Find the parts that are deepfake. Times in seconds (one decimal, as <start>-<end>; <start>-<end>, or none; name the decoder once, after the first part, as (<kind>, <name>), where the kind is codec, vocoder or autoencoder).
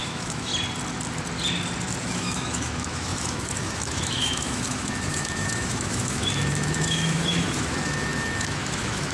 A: 0.0-0.5 (autoencoder, DAC-VAE); 2.0-9.1